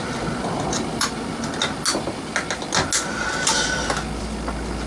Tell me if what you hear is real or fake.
real